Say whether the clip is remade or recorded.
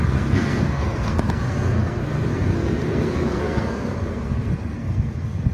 remade